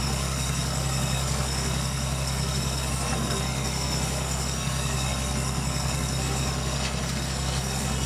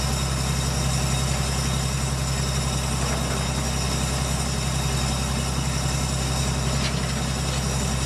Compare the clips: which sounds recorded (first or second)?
second